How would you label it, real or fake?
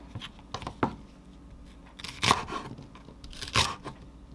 real